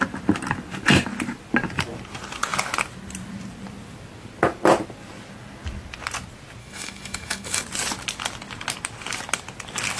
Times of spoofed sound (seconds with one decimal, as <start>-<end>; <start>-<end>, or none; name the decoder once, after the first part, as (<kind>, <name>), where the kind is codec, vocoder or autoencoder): 6.6-7.6 (autoencoder, DAC-VAE)